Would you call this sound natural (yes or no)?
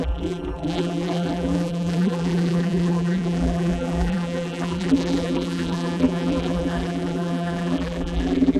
no